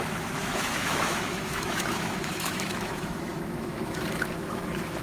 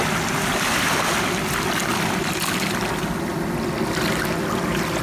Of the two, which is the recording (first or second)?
second